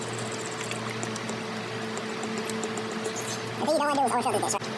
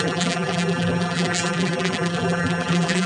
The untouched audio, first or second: first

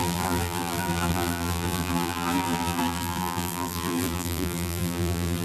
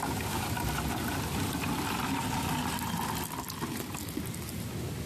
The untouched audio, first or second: second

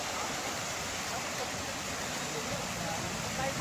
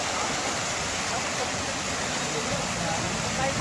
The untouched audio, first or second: second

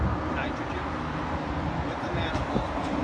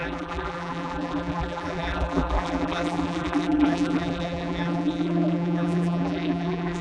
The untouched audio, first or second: first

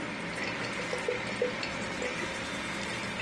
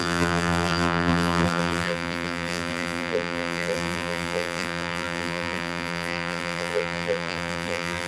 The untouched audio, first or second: first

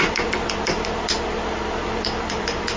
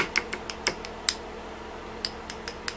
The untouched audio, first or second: second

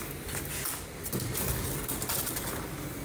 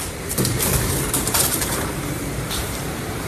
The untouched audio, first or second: first